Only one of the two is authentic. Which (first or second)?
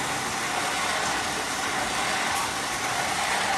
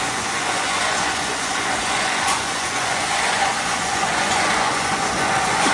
first